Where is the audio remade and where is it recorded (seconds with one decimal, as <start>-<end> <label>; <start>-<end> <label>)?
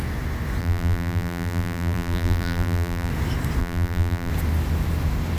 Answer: 0.0-0.6 recorded; 0.6-3.1 remade; 3.1-3.6 recorded; 3.6-4.3 remade; 4.3-5.4 recorded